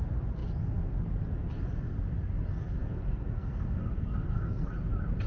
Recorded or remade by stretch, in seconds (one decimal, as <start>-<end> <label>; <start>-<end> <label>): 0.0-2.8 recorded; 2.8-4.7 remade; 4.7-5.3 recorded